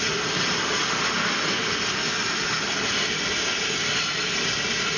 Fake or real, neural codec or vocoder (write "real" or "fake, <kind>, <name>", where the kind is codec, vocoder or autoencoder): real